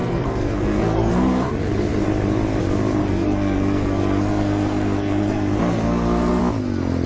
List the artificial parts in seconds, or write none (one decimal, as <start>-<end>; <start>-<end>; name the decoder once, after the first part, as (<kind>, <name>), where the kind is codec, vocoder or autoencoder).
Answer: 0.0-1.5 (codec, SNAC); 3.0-6.4